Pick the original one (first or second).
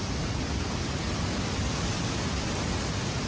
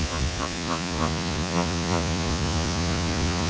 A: first